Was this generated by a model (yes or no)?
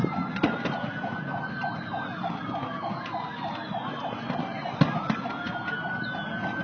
no